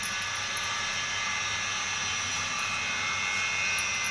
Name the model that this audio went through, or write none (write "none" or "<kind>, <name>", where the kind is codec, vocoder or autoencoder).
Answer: none